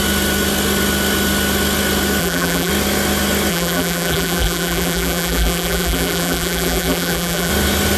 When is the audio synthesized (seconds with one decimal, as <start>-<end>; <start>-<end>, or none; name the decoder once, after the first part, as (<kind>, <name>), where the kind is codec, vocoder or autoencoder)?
2.2-2.7 (vocoder, BigVGAN v2); 3.5-7.5